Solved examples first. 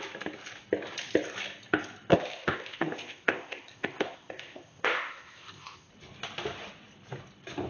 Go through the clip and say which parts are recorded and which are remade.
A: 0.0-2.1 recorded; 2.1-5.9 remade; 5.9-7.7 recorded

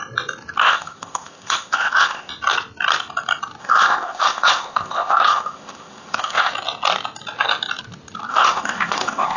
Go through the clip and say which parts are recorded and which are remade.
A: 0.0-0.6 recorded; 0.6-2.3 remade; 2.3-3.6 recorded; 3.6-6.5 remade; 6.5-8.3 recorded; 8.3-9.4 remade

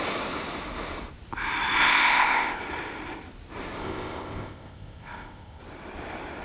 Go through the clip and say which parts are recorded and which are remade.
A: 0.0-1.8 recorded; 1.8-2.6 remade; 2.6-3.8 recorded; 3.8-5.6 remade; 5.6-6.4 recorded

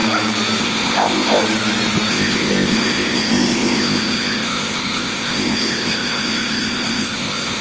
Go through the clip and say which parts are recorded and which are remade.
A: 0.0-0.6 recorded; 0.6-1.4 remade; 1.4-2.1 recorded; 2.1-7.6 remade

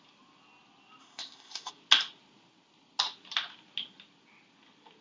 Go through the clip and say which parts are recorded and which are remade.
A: 0.0-1.0 recorded; 1.0-1.7 remade; 1.7-5.0 recorded